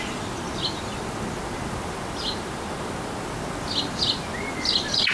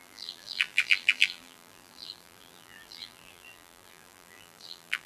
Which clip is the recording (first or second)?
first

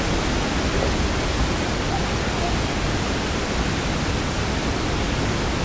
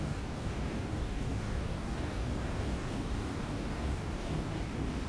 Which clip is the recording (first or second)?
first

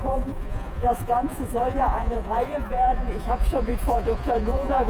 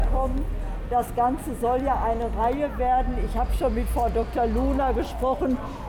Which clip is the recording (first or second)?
second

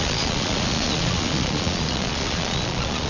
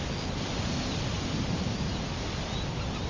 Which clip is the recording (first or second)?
second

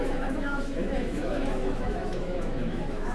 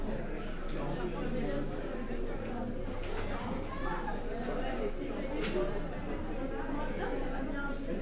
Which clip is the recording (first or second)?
second